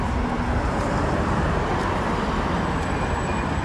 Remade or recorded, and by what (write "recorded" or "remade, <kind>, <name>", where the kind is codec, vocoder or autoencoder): recorded